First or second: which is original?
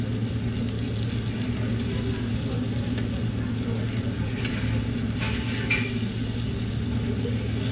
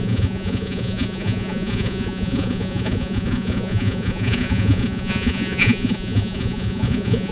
first